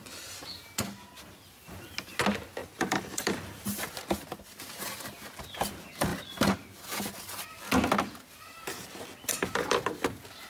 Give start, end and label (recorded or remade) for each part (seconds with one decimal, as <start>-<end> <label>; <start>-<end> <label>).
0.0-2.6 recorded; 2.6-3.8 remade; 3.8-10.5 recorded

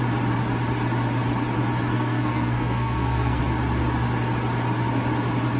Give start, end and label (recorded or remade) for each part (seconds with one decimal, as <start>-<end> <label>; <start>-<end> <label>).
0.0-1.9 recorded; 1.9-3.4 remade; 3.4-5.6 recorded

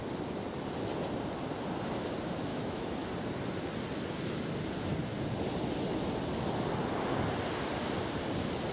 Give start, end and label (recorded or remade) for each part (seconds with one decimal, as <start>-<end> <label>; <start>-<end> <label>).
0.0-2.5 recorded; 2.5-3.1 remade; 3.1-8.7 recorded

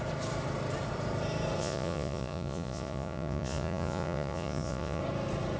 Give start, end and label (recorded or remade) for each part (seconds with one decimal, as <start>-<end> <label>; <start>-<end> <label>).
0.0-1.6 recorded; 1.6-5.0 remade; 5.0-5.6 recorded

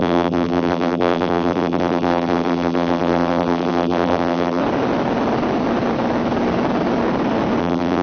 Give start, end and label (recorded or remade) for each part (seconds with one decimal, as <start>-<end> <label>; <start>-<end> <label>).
0.0-4.6 remade; 4.6-7.6 recorded; 7.6-8.0 remade